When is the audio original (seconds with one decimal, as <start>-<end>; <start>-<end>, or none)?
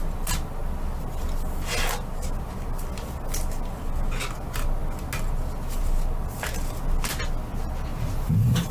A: 0.0-7.9